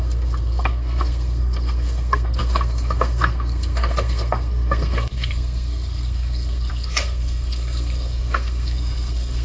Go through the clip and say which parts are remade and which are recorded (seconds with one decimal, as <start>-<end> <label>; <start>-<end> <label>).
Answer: 0.0-9.4 remade